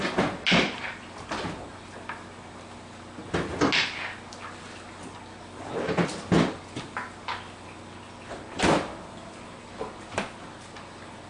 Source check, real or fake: real